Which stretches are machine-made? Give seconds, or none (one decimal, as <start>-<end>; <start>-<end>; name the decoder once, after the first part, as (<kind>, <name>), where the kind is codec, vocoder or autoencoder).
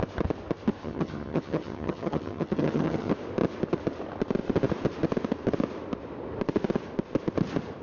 0.8-3.1 (vocoder, HiFi-GAN)